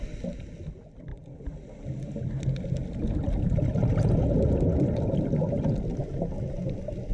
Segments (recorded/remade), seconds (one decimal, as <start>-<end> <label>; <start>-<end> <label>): 0.0-7.1 recorded